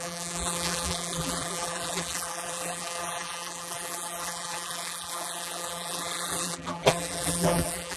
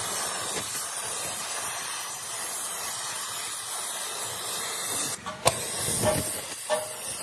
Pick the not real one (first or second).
first